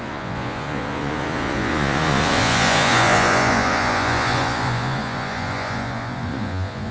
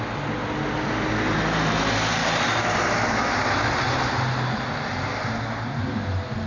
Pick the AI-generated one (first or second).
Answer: first